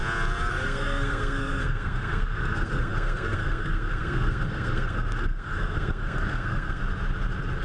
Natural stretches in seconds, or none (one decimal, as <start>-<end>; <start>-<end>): 0.0-0.5; 6.8-7.6